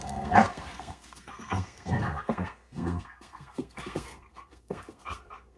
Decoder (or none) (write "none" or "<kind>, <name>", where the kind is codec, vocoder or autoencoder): codec, SNAC